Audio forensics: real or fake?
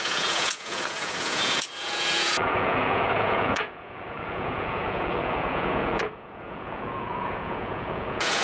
fake